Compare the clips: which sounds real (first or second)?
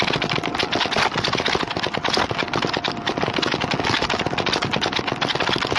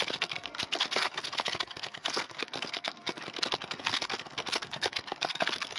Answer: first